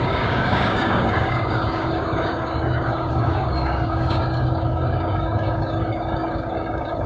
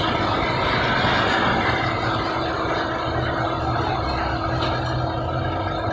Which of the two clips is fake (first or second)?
first